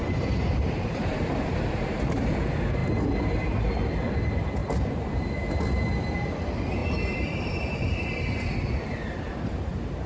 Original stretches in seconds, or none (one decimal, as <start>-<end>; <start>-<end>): 2.0-4.6; 5.6-6.8